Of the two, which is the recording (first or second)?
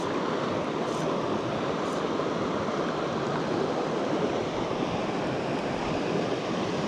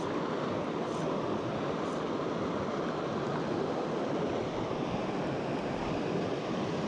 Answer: second